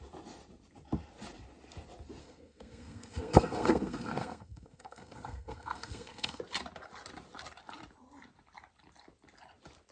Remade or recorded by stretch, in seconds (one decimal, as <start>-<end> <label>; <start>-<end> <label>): 0.0-2.2 recorded; 2.2-6.4 remade; 6.4-9.9 recorded